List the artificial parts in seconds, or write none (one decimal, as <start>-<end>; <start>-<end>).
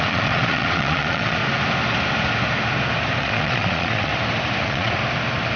0.0-1.4; 3.2-4.1; 4.6-5.0